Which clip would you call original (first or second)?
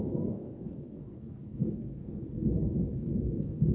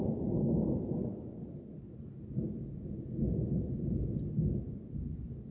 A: second